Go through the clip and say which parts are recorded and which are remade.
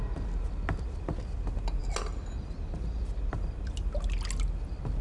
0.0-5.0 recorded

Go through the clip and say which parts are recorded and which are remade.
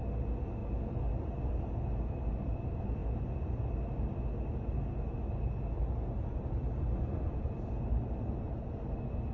0.0-9.3 recorded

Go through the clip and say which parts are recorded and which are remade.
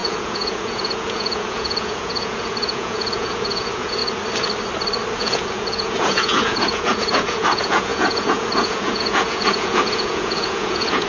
0.0-4.0 remade; 4.0-5.1 recorded; 5.1-11.1 remade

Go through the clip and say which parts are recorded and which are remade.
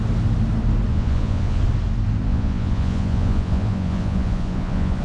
0.0-0.9 recorded; 0.9-1.6 remade; 1.6-2.3 recorded; 2.3-5.0 remade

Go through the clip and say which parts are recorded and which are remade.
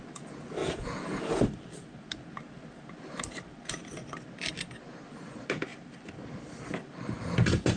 0.0-0.6 recorded; 0.6-1.4 remade; 1.4-7.8 recorded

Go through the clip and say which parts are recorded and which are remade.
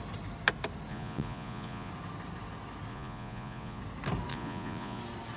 0.0-0.9 recorded; 0.9-1.9 remade; 1.9-2.9 recorded; 2.9-3.8 remade; 3.8-4.3 recorded; 4.3-5.0 remade; 5.0-5.4 recorded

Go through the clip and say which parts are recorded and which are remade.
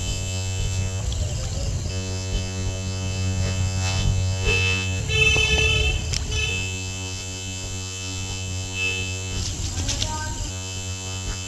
0.0-1.0 remade; 1.0-1.9 recorded; 1.9-5.0 remade; 5.0-6.5 recorded; 6.5-9.4 remade; 9.4-10.5 recorded; 10.5-11.5 remade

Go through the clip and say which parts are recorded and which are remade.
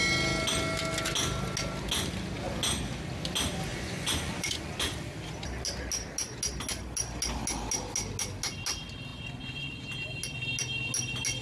0.0-3.7 recorded; 3.7-4.9 remade; 4.9-9.1 recorded; 9.1-9.8 remade; 9.8-11.4 recorded